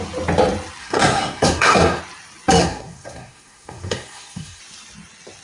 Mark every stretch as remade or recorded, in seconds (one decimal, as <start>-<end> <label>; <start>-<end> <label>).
0.0-0.8 recorded; 0.8-2.0 remade; 2.0-2.6 recorded; 2.6-4.6 remade; 4.6-5.4 recorded